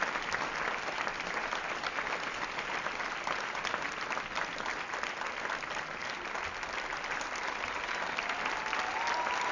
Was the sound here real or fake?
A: real